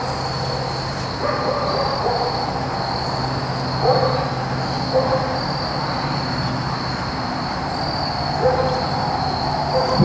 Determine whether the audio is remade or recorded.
recorded